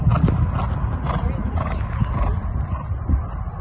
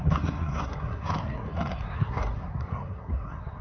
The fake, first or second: second